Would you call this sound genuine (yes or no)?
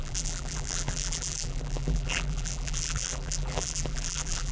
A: no